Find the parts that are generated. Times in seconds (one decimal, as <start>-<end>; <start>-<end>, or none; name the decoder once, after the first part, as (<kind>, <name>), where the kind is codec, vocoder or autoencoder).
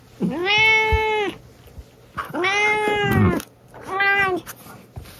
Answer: none